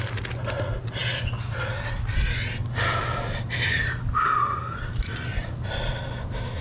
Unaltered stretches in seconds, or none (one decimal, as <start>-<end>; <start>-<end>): 0.0-6.6